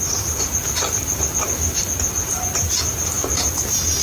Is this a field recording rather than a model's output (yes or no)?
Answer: yes